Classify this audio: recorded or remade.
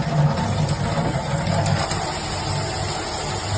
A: recorded